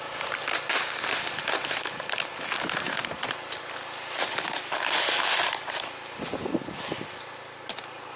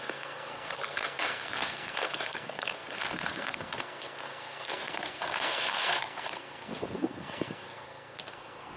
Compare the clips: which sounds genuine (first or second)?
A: first